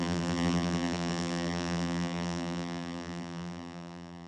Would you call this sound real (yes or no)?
no